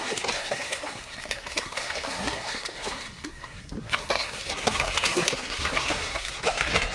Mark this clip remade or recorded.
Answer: remade